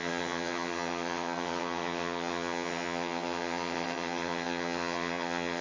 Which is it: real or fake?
fake